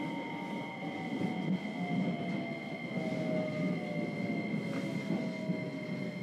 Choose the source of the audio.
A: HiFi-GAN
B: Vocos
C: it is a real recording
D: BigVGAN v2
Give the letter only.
C